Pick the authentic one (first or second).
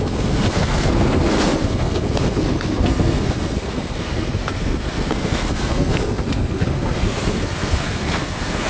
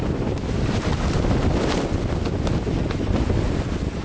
second